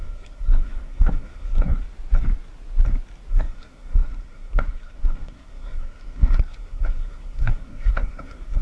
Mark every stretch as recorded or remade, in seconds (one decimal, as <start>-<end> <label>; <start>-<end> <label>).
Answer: 0.0-1.8 remade; 1.8-3.3 recorded; 3.3-8.6 remade